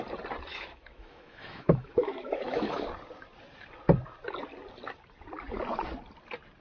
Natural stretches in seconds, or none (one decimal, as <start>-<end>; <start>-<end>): 0.0-0.5; 2.9-6.6